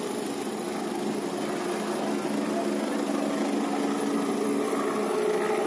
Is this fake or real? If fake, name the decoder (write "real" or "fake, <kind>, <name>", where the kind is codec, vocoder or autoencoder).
real